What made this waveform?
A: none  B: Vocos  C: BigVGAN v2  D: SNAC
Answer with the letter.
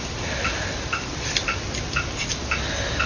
C